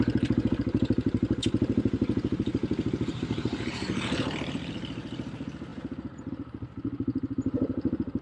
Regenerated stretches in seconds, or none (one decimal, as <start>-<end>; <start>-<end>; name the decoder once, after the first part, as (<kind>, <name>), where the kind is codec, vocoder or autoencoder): 0.0-2.6 (vocoder, BigVGAN v2); 3.1-8.2